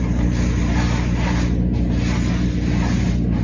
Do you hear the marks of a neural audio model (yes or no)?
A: no